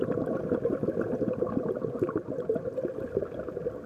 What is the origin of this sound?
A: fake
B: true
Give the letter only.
B